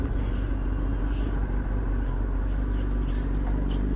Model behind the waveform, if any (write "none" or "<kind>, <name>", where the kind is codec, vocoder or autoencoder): none